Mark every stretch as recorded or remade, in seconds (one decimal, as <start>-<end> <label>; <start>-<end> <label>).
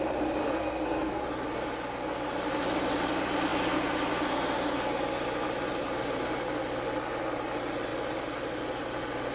0.0-0.4 recorded; 0.4-1.2 remade; 1.2-9.3 recorded